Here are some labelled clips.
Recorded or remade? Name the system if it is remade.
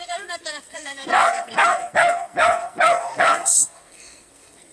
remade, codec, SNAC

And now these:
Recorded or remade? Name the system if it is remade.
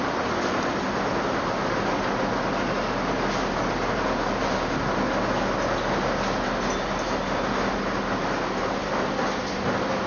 recorded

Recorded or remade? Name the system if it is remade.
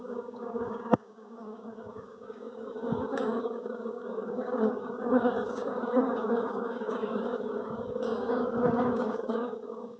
remade, codec, DAC